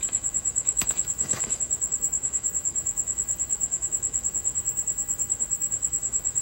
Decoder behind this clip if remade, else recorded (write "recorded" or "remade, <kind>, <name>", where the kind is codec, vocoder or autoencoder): remade, autoencoder, DAC-VAE